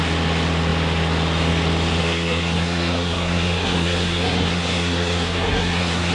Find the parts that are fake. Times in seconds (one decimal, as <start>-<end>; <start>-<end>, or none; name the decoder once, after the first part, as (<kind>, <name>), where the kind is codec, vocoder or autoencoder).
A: 2.0-6.1 (codec, SNAC)